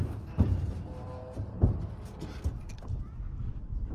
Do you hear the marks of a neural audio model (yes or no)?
no